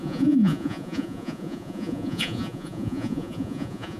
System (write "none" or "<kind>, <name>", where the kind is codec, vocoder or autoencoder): vocoder, Vocos